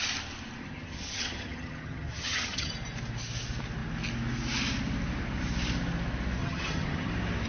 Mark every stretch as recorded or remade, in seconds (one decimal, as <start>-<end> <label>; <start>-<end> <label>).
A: 0.0-0.6 recorded; 0.6-2.7 remade; 2.7-6.4 recorded; 6.4-7.1 remade; 7.1-7.5 recorded